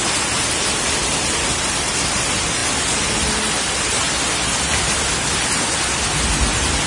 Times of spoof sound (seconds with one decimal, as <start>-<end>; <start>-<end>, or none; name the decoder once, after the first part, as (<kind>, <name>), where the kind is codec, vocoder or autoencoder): none